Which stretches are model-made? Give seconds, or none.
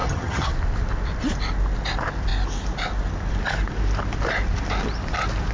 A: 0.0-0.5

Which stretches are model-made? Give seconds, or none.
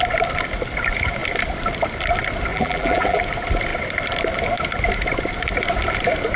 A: 2.5-3.2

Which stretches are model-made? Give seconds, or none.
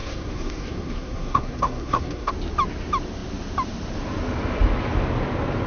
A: 0.0-2.3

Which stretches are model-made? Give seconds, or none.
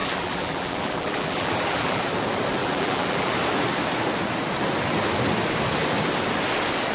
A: 0.0-2.0; 2.6-3.3